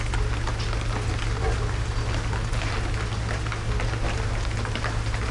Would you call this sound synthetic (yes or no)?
no